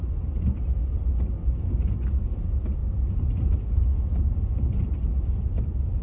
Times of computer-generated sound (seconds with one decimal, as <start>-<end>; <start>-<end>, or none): none